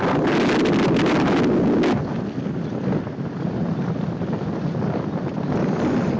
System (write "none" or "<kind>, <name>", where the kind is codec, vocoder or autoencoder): none